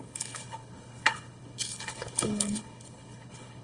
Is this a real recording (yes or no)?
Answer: no